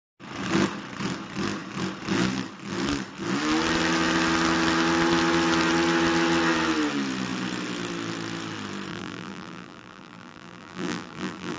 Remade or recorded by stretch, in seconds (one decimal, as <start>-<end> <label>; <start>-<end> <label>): 0.0-8.9 recorded; 8.9-11.6 remade